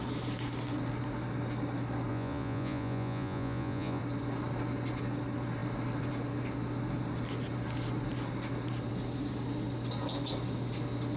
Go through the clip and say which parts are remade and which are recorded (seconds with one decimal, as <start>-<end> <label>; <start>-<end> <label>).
0.0-2.1 recorded; 2.1-4.0 remade; 4.0-11.2 recorded